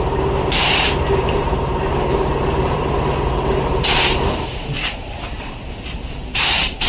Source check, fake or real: fake